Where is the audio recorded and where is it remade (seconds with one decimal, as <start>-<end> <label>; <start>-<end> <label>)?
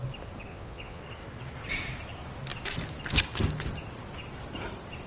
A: 0.0-0.5 recorded; 0.5-1.0 remade; 1.0-5.1 recorded